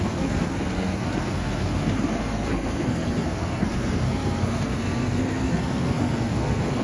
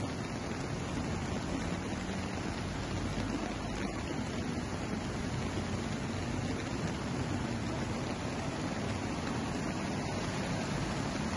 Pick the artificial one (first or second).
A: first